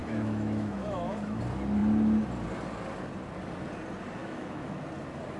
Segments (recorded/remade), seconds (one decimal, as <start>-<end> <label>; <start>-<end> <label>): 0.0-1.4 remade; 1.4-4.2 recorded; 4.2-4.8 remade; 4.8-5.4 recorded